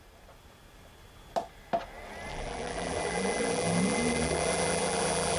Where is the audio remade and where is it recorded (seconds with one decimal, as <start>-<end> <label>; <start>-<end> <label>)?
0.0-2.3 recorded; 2.3-5.4 remade